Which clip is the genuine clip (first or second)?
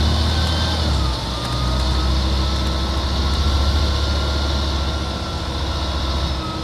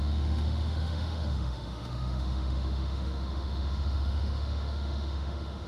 first